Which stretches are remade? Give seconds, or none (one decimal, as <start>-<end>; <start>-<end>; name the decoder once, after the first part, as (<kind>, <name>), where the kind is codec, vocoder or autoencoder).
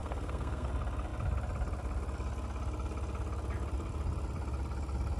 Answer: 0.0-0.7 (codec, SNAC)